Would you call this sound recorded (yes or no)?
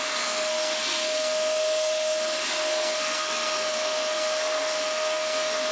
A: no